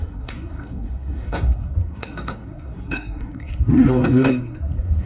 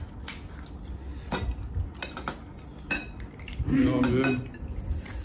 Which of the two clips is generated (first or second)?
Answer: first